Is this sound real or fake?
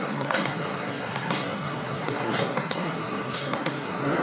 fake